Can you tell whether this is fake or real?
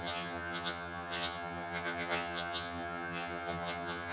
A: fake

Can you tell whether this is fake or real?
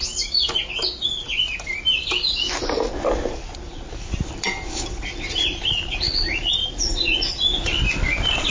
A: real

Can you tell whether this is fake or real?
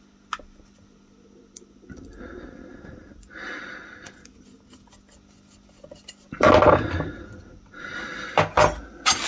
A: real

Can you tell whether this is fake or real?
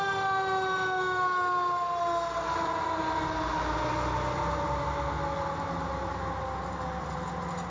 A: real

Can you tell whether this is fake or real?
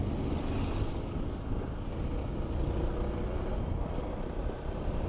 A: real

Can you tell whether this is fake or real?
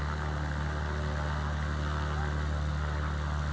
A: real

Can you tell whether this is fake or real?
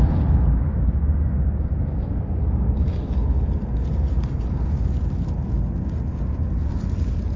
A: real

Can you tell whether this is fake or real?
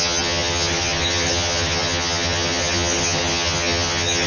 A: fake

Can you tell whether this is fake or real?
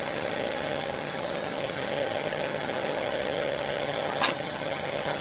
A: fake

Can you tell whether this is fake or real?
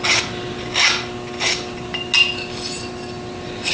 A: real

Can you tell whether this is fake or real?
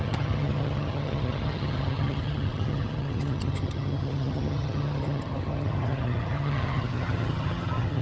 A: fake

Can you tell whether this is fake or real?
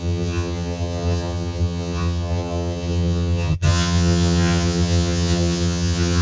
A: fake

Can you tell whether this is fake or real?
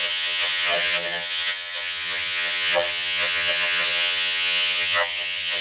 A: fake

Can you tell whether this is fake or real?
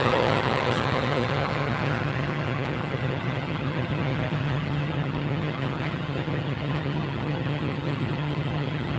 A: fake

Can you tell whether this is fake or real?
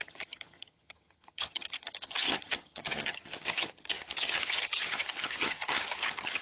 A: fake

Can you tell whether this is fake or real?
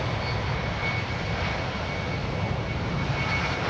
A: real